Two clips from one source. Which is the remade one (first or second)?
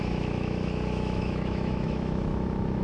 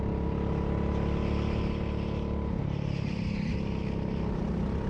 first